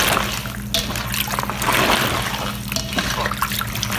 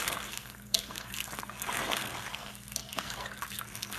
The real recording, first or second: first